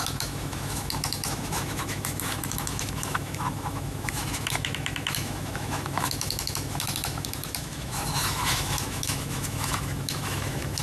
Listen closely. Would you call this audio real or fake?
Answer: fake